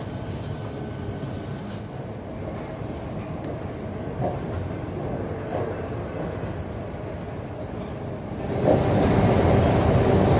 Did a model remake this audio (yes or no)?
no